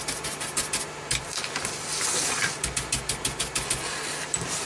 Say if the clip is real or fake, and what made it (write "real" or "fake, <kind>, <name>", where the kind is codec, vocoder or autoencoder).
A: real